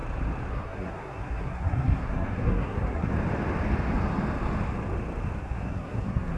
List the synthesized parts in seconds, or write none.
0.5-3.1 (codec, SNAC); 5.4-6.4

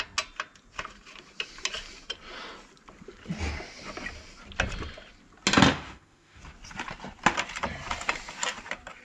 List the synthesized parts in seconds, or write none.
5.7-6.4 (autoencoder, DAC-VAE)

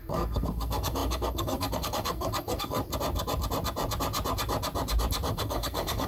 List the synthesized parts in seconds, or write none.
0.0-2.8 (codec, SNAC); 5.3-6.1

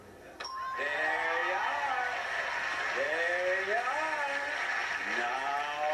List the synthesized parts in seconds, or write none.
none

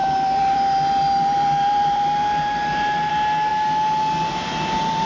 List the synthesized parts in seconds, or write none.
0.0-3.1 (vocoder, BigVGAN v2)

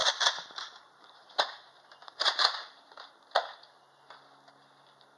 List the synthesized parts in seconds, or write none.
0.0-3.1 (vocoder, BigVGAN v2)